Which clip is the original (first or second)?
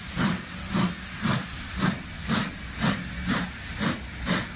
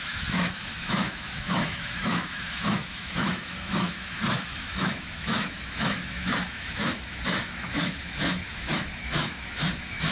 first